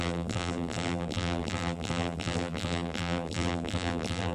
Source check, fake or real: fake